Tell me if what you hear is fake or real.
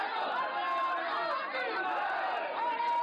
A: real